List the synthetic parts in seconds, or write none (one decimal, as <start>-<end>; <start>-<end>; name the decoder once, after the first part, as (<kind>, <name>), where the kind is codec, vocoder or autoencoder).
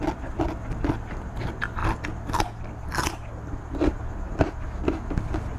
none